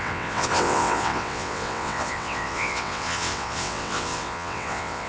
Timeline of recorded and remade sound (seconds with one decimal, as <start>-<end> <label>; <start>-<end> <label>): 0.0-5.1 remade